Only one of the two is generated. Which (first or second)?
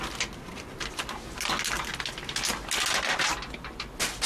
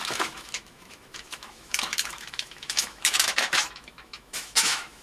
second